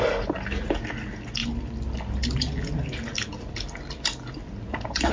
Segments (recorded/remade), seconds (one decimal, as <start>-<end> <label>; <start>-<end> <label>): 0.0-5.1 recorded